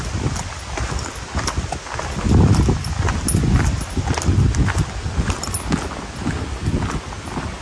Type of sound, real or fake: real